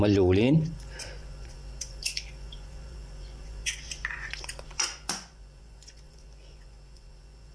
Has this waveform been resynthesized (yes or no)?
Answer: yes